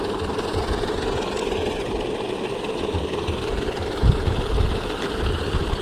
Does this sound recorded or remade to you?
recorded